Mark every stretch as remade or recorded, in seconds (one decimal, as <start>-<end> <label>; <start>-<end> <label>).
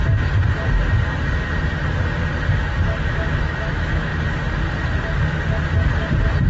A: 0.0-3.0 recorded; 3.0-4.1 remade; 4.1-6.5 recorded